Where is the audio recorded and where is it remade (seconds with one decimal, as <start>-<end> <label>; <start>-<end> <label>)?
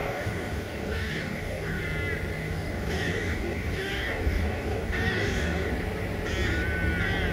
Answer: 0.0-1.8 remade; 1.8-2.4 recorded; 2.4-5.7 remade; 5.7-7.3 recorded